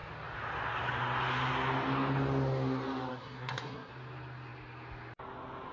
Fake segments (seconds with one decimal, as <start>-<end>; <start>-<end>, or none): 3.1-3.9